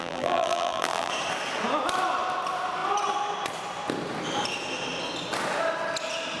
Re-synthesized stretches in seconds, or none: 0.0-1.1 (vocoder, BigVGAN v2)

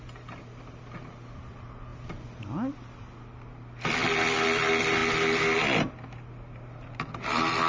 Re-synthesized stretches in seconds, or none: none